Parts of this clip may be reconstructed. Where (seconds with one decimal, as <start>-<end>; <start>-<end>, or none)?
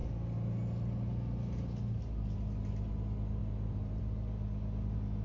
3.4-4.0